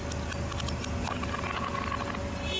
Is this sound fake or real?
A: real